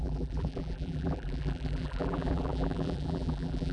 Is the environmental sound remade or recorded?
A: remade